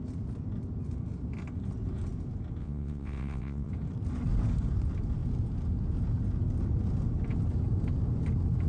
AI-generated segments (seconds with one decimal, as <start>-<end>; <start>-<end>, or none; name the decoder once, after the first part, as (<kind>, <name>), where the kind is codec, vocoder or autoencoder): 2.6-3.7 (vocoder, WaveNeXt)